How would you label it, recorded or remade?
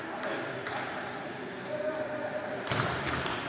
remade